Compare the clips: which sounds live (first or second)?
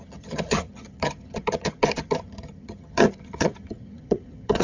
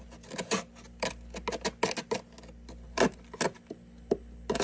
second